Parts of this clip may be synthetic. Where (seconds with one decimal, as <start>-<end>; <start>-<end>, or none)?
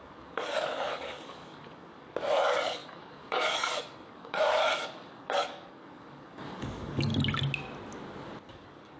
0.0-7.1; 8.5-9.0